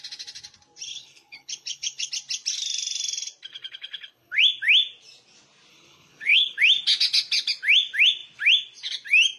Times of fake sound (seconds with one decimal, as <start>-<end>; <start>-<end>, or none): 0.9-2.1; 3.5-4.4; 5.7-6.6